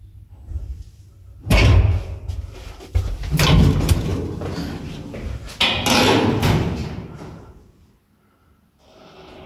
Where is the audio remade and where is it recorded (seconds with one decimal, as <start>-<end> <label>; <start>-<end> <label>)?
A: 0.0-1.4 recorded; 1.4-3.0 remade; 3.0-6.8 recorded; 6.8-7.5 remade; 7.5-9.5 recorded